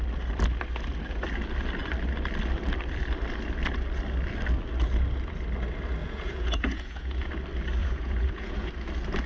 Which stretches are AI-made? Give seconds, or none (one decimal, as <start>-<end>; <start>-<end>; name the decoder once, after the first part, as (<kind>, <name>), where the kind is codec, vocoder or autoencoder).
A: 6.0-7.3 (vocoder, Vocos); 7.8-8.7